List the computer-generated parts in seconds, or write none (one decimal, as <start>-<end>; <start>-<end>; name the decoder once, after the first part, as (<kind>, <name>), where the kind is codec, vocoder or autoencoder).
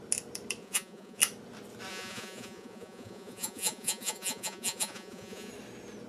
0.6-1.2 (vocoder, Vocos); 1.9-5.5